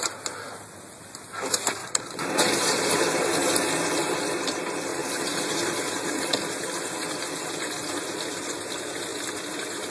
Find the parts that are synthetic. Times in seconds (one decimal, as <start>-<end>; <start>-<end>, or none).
1.8-2.9; 4.9-6.3